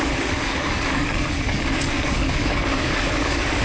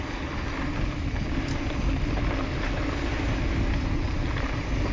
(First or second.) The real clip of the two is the second